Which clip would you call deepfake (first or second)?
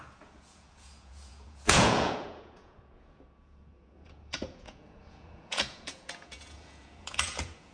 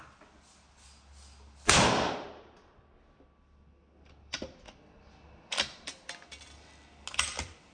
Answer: first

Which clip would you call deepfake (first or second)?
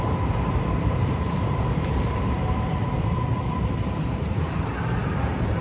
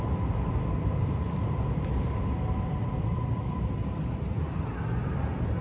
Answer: first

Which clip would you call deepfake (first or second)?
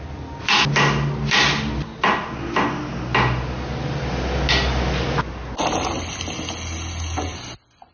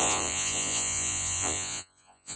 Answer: second